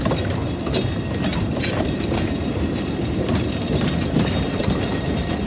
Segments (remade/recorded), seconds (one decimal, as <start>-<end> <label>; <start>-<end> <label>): 0.0-1.3 recorded; 1.3-4.6 remade; 4.6-5.5 recorded